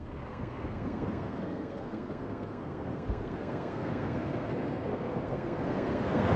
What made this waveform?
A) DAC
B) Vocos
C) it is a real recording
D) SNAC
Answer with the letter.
D